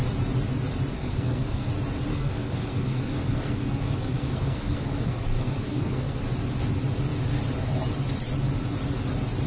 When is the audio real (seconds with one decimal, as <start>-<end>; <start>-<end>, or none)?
0.0-0.9; 1.7-2.1; 6.2-9.5